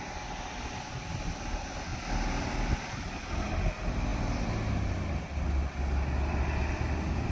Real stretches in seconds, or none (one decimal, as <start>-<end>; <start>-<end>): 0.0-7.3